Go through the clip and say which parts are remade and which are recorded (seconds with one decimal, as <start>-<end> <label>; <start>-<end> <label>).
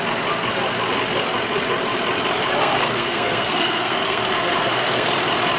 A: 0.0-2.6 recorded; 2.6-5.1 remade; 5.1-5.6 recorded